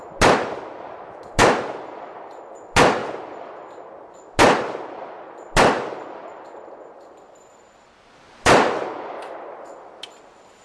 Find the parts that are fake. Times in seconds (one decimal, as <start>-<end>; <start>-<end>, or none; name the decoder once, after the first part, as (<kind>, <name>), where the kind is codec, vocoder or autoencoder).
none